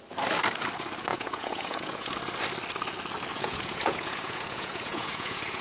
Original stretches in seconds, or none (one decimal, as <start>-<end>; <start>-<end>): 0.0-1.1; 2.1-3.3